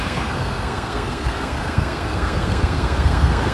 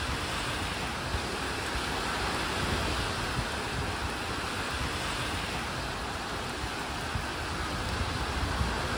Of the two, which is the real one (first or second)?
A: second